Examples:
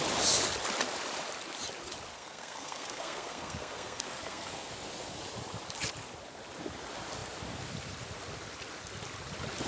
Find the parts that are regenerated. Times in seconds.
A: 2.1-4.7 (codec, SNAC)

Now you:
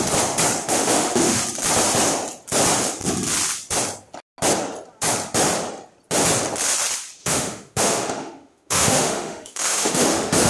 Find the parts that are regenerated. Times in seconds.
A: 0.6-1.4 (autoencoder, DAC-VAE); 7.2-10.5

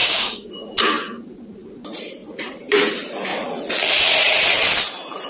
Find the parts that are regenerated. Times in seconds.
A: 0.0-0.5 (codec, DAC)

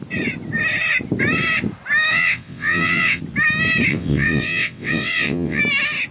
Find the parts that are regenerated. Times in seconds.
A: 2.1-3.2 (vocoder, WaveNeXt); 3.9-5.6